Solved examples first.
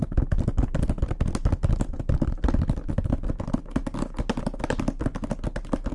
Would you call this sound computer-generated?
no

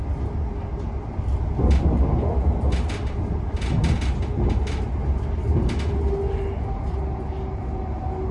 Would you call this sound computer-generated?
no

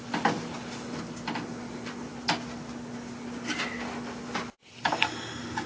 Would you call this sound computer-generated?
no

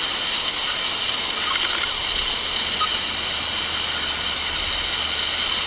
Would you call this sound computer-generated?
no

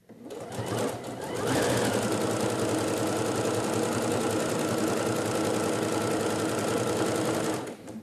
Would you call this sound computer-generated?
no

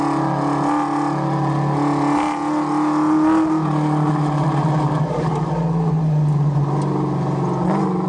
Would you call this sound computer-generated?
no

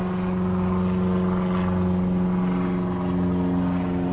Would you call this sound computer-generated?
no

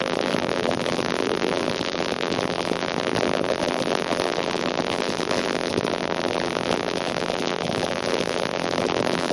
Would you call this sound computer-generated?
yes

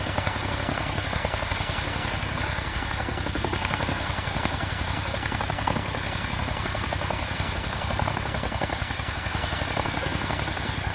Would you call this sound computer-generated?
yes